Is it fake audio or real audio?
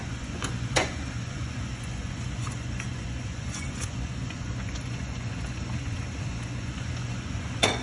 fake